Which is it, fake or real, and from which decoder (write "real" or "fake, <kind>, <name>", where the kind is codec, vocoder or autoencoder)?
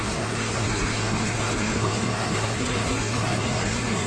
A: fake, codec, SNAC